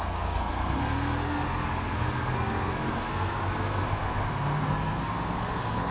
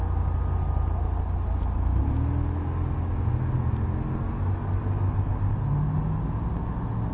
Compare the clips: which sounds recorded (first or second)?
second